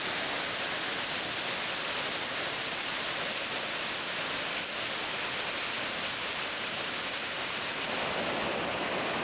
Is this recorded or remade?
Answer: recorded